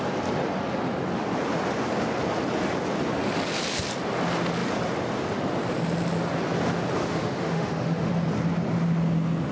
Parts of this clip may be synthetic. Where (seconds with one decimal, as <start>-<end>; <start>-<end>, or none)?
7.0-8.1